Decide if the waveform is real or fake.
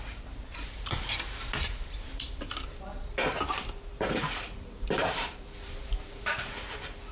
fake